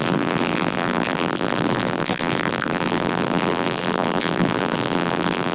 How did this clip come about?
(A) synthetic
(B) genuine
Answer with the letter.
A